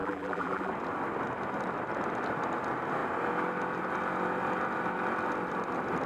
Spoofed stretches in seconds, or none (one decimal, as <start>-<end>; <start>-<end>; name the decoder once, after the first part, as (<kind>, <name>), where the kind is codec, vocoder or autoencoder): 0.0-0.7 (vocoder, BigVGAN v2)